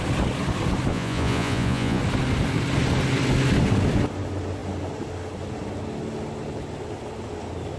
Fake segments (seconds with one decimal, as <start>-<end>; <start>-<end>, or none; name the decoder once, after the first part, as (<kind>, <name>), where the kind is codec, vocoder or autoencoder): 0.9-2.0 (vocoder, Vocos)